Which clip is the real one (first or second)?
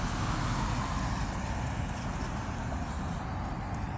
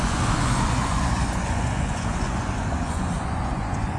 first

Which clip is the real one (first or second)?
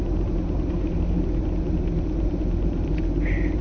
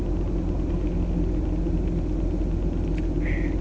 second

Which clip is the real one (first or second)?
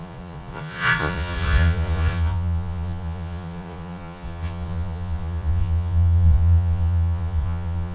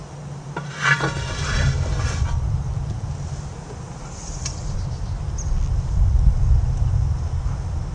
second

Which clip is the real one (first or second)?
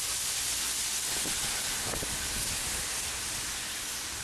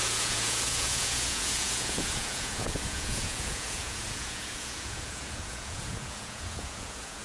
first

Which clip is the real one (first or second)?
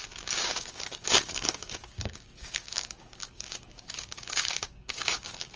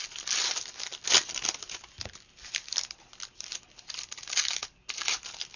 second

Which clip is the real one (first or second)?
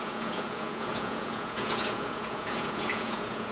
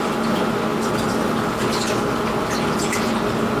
second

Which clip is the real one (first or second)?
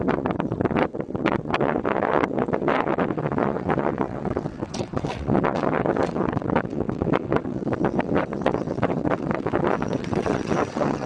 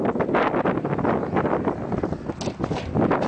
second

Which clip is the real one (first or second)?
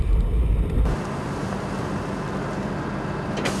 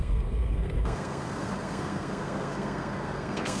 first